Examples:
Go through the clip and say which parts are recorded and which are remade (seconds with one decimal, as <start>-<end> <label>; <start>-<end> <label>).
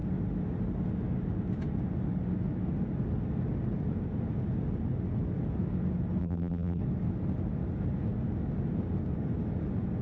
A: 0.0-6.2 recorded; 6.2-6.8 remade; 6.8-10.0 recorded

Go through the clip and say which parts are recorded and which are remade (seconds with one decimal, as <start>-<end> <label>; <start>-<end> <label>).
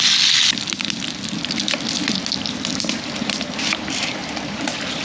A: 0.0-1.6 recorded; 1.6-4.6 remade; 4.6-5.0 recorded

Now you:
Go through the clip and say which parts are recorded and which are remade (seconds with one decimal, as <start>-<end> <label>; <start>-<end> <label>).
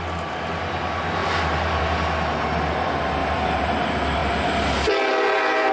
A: 0.0-1.2 recorded; 1.2-1.8 remade; 1.8-5.7 recorded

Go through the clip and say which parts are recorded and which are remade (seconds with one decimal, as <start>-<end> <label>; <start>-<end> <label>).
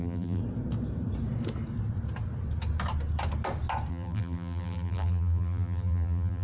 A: 0.0-0.4 remade; 0.4-3.9 recorded; 3.9-6.4 remade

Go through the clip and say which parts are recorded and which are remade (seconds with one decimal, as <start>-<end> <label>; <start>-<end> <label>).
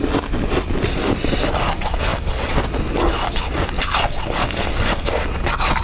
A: 0.0-5.8 recorded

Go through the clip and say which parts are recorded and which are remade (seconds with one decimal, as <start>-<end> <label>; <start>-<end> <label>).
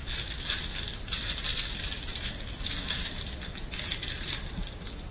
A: 0.0-1.5 recorded; 1.5-3.1 remade; 3.1-5.1 recorded